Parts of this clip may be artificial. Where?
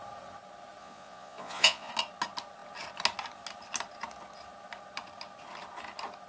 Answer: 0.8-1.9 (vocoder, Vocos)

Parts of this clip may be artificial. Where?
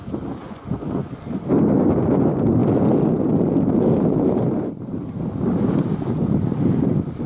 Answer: 0.4-1.1 (vocoder, Vocos)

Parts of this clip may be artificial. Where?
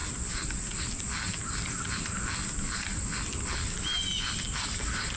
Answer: none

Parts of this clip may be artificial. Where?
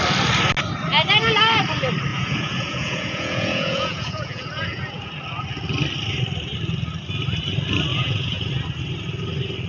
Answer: 2.1-5.1 (vocoder, Vocos); 7.9-8.5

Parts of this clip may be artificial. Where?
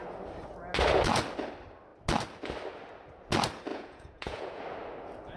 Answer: 3.7-4.6 (vocoder, Vocos)